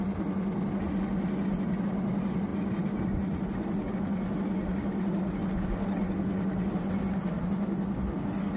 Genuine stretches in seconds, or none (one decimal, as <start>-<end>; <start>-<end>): 0.0-8.6